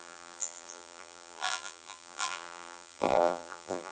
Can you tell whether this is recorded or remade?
remade